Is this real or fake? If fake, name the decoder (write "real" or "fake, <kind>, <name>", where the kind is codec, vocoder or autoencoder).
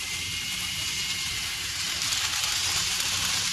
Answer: fake, vocoder, BigVGAN v2